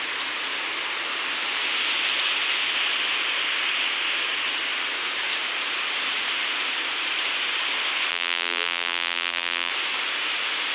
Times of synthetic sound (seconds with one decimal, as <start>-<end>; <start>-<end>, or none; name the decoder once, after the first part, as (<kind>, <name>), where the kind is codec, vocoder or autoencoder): 8.1-9.7 (vocoder, BigVGAN v2)